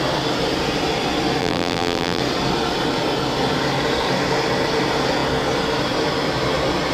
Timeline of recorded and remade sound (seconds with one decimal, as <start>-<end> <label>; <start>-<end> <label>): 0.0-1.4 recorded; 1.4-2.2 remade; 2.2-6.9 recorded